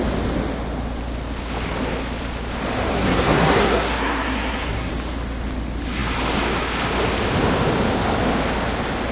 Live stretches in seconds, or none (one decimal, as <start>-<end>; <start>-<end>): 0.0-2.9; 4.9-9.1